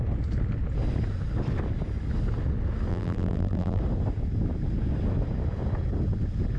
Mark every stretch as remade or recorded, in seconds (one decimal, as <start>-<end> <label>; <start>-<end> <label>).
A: 0.0-2.9 recorded; 2.9-3.8 remade; 3.8-6.6 recorded